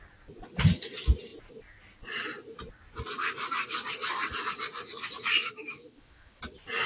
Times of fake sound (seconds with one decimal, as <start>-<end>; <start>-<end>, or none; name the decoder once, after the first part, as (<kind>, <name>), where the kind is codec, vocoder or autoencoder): 5.4-6.4 (autoencoder, DAC-VAE)